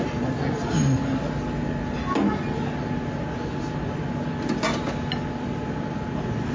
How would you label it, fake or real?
real